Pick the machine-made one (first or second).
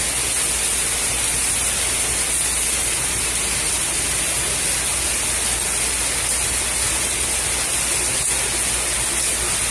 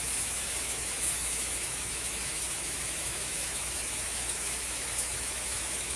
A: second